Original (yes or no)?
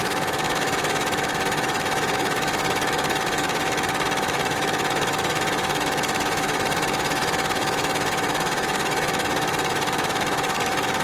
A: no